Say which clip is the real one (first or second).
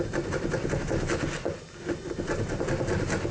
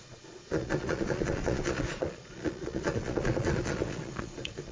first